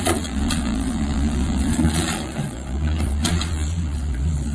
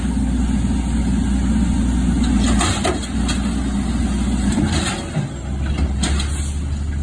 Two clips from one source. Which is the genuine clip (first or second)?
second